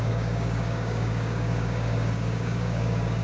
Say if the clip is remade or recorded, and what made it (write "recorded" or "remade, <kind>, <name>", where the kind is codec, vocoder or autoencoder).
remade, codec, DAC